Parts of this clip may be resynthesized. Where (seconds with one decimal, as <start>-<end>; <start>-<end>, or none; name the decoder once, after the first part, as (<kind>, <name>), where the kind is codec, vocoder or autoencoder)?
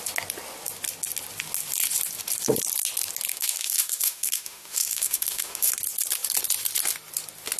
3.3-5.7 (autoencoder, DAC-VAE)